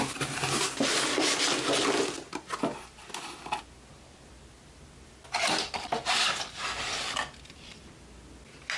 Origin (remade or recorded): recorded